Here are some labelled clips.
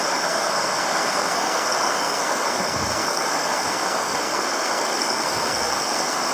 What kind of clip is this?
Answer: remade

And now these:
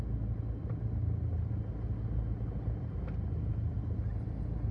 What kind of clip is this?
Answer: recorded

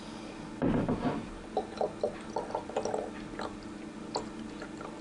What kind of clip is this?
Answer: recorded